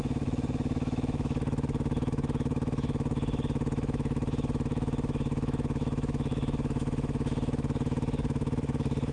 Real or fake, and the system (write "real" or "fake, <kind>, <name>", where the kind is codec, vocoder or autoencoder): fake, autoencoder, DAC-VAE